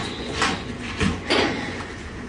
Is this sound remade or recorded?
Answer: remade